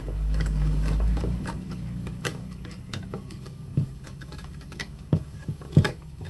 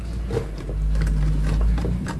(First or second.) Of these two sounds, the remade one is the first